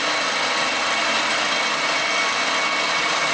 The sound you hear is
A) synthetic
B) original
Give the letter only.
B